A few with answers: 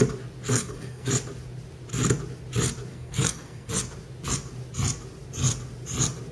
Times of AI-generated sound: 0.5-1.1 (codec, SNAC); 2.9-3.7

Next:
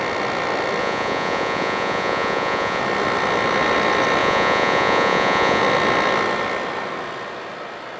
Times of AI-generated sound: 0.8-2.8 (vocoder, Vocos); 4.2-5.6